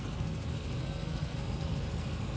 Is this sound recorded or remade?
remade